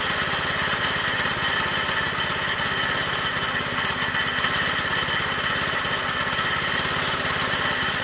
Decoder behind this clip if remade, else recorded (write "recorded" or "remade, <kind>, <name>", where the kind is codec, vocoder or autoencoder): recorded